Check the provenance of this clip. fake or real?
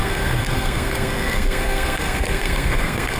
fake